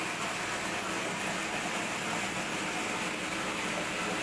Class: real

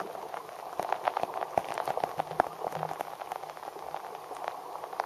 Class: real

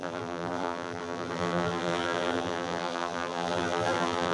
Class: fake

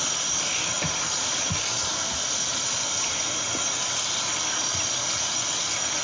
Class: real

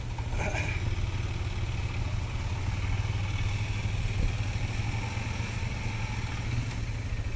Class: real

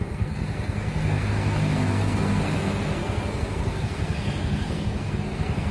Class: fake